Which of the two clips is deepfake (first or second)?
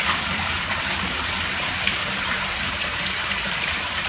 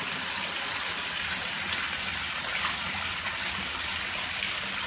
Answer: first